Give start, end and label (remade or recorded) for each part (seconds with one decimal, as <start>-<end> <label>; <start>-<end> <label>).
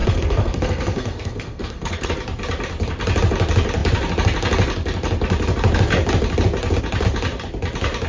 0.0-2.1 remade; 2.1-8.1 recorded